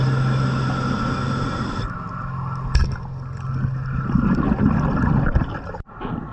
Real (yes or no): yes